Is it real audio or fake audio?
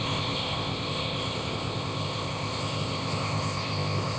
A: fake